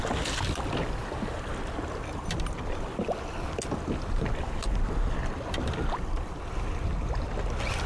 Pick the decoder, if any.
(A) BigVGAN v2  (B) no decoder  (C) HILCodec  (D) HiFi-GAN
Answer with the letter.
B